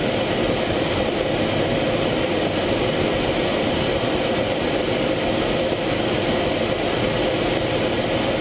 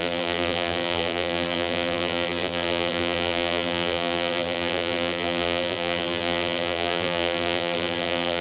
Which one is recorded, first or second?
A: first